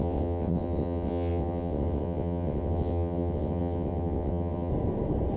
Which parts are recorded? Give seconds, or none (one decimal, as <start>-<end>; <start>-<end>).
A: 4.7-5.4